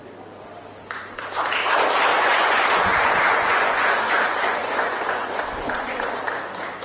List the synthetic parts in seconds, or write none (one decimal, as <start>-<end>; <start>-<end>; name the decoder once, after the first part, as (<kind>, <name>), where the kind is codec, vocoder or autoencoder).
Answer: 2.1-6.2 (vocoder, Vocos)